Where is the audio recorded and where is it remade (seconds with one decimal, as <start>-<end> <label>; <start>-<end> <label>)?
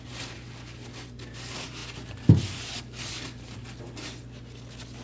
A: 0.0-5.0 recorded